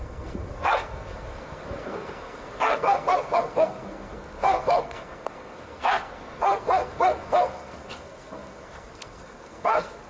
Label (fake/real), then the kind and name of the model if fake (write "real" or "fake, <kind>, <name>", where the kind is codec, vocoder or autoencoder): fake, codec, SNAC